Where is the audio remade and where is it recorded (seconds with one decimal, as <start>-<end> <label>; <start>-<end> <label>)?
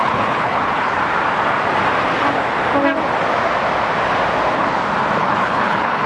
0.0-1.0 remade; 1.0-5.2 recorded; 5.2-6.1 remade